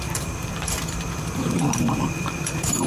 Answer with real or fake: fake